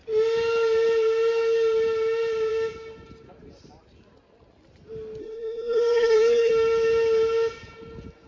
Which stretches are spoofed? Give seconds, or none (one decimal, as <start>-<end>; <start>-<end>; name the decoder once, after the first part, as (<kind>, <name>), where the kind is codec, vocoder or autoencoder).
5.2-6.5 (codec, SNAC)